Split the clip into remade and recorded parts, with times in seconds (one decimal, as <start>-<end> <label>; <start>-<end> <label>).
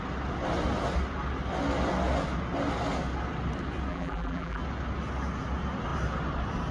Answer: 0.0-3.9 recorded; 3.9-4.6 remade; 4.6-6.7 recorded